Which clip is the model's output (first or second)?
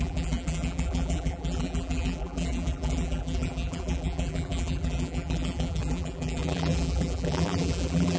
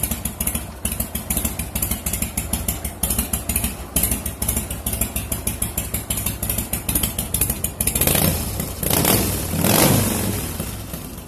first